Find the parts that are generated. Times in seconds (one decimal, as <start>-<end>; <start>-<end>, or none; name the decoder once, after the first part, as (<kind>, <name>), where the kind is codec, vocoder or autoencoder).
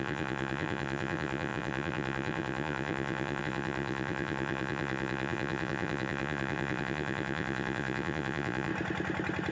0.0-8.7 (vocoder, Vocos)